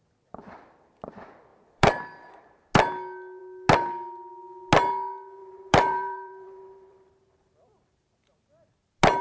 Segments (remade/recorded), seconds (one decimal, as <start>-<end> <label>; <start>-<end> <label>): 0.0-1.5 recorded; 1.5-2.6 remade; 2.6-5.4 recorded; 5.4-7.1 remade; 7.1-9.2 recorded